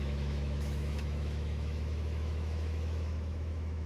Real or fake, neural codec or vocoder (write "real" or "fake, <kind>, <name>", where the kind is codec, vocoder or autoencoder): fake, autoencoder, DAC-VAE